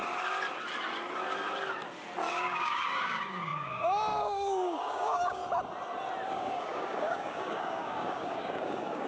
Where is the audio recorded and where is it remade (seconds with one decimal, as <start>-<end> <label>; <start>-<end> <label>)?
0.0-2.3 recorded; 2.3-5.4 remade; 5.4-6.3 recorded; 6.3-9.1 remade